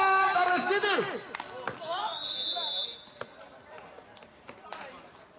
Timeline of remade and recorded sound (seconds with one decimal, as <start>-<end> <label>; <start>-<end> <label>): 0.0-5.4 recorded